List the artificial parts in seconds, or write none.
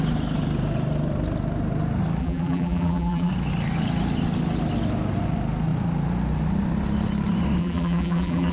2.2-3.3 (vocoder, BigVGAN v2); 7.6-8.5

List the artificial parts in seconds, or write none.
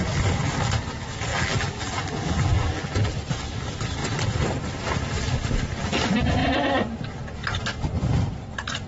1.3-3.2 (vocoder, BigVGAN v2)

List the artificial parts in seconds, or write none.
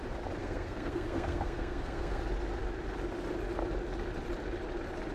0.4-2.2 (codec, SNAC)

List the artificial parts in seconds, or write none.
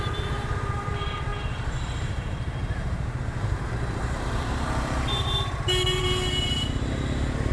0.0-6.0 (vocoder, BigVGAN v2)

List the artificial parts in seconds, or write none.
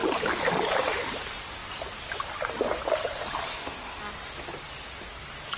3.5-4.0 (codec, SNAC)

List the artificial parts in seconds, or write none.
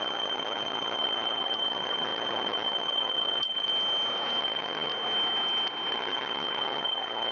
0.0-3.7 (vocoder, HiFi-GAN); 4.4-4.9; 5.9-7.3